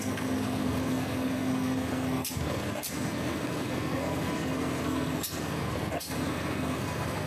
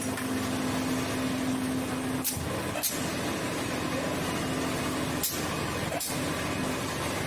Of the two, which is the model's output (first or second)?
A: first